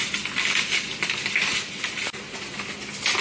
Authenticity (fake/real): real